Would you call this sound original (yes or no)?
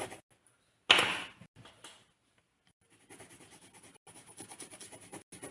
yes